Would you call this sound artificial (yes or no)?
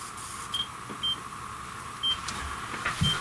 no